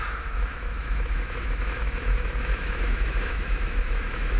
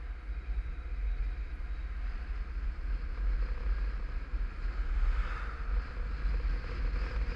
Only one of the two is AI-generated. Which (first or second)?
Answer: first